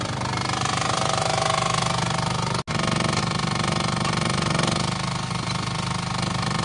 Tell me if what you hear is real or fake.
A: real